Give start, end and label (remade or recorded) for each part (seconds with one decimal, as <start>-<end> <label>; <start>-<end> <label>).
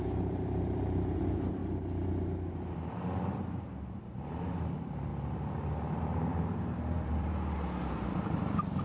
0.0-1.6 remade; 1.6-2.9 recorded; 2.9-5.1 remade; 5.1-6.0 recorded; 6.0-8.8 remade